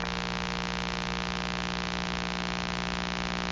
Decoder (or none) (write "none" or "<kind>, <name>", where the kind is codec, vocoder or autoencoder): none